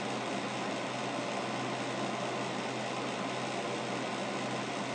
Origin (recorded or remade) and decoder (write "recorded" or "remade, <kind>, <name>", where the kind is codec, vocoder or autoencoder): recorded